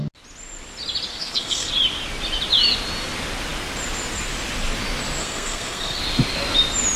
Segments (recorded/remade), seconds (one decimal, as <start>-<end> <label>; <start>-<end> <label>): 0.0-1.1 recorded; 1.1-1.7 remade; 1.7-5.2 recorded; 5.2-6.0 remade; 6.0-7.0 recorded